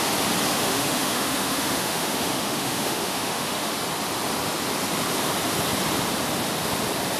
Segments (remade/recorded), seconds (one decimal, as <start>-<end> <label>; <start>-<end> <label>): 0.0-0.5 recorded; 0.5-3.7 remade; 3.7-7.2 recorded